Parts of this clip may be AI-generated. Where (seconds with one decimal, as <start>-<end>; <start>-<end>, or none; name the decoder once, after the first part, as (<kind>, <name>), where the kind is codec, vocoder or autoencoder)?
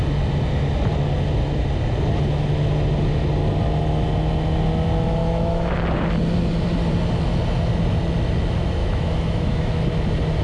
5.2-5.7 (autoencoder, DAC-VAE); 8.8-9.8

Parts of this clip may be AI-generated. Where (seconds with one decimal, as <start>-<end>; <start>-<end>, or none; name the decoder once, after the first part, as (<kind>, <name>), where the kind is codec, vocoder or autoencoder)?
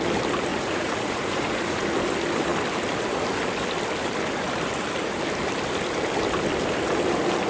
0.5-1.9 (vocoder, Vocos)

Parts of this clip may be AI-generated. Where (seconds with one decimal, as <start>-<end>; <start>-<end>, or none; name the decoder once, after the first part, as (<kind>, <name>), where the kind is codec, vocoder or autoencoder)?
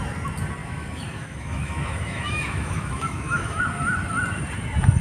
0.6-3.6 (autoencoder, DAC-VAE)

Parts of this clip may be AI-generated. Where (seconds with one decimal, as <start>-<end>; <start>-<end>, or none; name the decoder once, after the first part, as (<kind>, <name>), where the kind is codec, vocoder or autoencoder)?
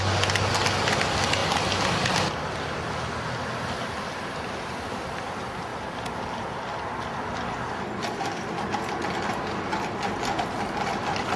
5.7-8.5 (vocoder, BigVGAN v2)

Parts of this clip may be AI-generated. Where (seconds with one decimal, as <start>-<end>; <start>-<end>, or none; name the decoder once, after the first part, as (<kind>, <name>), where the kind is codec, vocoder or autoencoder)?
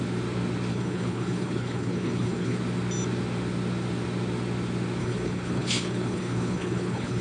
0.7-2.6 (codec, HILCodec); 5.0-7.2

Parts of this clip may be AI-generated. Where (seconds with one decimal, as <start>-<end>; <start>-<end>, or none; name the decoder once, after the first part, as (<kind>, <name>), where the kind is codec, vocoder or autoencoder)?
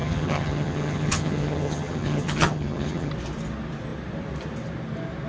0.0-3.1 (vocoder, HiFi-GAN)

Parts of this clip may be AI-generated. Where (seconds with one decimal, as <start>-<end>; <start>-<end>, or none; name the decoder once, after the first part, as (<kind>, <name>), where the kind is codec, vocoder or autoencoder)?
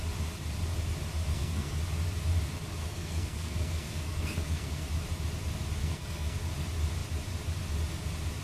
1.3-1.8 (codec, SNAC); 2.8-4.9; 5.8-6.4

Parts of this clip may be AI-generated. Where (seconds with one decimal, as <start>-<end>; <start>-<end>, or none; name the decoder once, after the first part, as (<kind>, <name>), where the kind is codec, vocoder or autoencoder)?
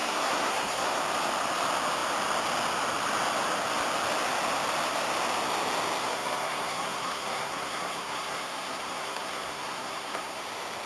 0.0-1.0 (codec, SNAC); 6.0-10.4